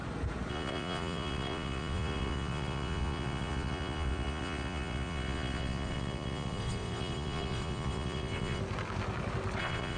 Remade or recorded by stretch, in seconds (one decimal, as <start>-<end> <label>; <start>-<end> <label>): 0.0-0.5 recorded; 0.5-8.6 remade; 8.6-9.6 recorded; 9.6-10.0 remade